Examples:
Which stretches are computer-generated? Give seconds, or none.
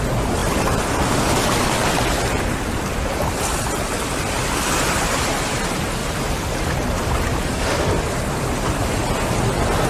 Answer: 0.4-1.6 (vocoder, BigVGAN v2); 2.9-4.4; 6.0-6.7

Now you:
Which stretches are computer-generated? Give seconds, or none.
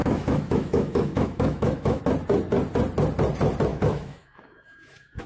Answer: 0.0-2.0 (autoencoder, DAC-VAE); 3.7-5.3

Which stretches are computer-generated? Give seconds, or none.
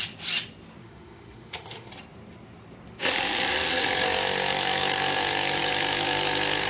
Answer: 0.8-1.9 (autoencoder, DAC-VAE)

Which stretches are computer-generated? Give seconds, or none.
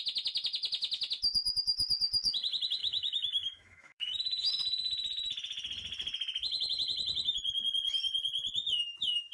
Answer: 2.8-4.5 (autoencoder, DAC-VAE)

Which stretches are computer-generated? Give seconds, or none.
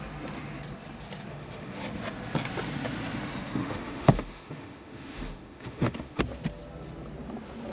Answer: 1.3-1.8 (autoencoder, DAC-VAE); 3.6-6.2